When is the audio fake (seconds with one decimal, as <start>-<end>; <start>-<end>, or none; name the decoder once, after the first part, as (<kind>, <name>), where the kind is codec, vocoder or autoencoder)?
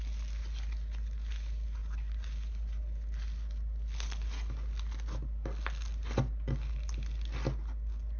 none